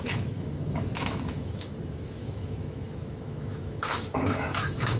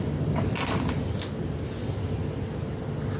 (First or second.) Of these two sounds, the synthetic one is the first